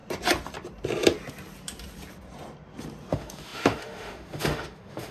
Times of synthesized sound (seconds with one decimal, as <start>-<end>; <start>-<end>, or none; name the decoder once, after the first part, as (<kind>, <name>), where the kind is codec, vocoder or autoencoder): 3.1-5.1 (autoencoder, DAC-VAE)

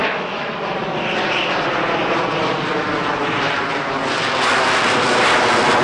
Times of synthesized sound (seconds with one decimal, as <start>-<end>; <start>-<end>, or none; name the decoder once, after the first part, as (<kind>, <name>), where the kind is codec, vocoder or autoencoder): 0.0-0.6 (autoencoder, DAC-VAE)

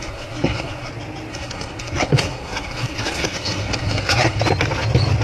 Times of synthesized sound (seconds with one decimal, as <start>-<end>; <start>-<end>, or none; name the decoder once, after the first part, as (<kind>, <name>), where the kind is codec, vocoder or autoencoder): 0.0-0.9 (codec, SNAC); 1.3-4.4

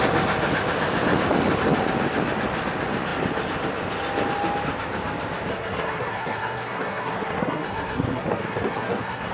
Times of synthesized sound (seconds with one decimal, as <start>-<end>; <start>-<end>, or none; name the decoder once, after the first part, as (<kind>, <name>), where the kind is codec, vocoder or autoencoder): 5.5-9.3 (codec, SNAC)